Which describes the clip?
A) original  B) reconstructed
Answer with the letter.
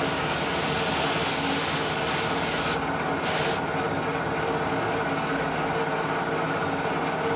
A